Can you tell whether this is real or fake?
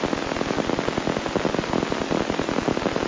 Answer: real